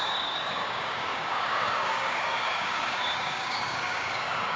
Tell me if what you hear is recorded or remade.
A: remade